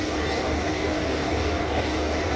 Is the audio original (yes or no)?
no